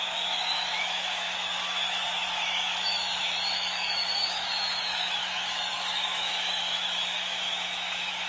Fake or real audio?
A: fake